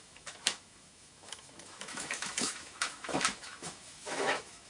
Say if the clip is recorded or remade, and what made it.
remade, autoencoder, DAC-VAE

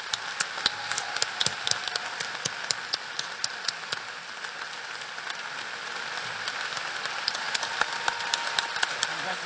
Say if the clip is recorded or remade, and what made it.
recorded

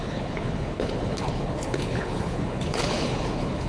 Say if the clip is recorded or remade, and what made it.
remade, codec, HILCodec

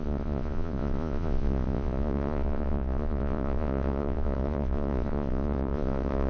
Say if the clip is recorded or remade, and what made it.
remade, vocoder, Vocos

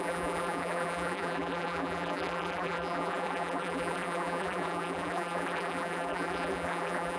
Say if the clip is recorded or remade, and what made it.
remade, vocoder, BigVGAN v2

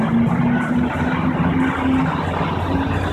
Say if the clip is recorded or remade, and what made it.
recorded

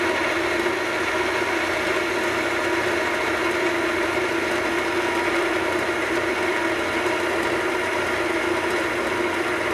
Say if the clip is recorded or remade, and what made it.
recorded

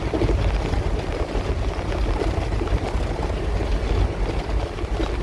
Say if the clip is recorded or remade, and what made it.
recorded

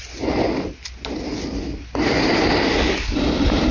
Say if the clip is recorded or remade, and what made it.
recorded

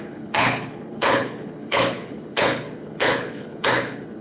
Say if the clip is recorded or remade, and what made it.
remade, codec, HILCodec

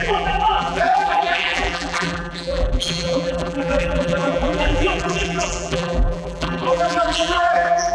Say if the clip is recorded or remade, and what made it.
remade, vocoder, BigVGAN v2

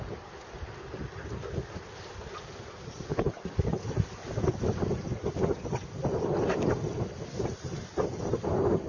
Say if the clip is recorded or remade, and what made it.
recorded